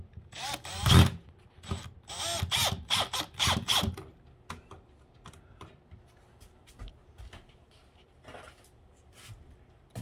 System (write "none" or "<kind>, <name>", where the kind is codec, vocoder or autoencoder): none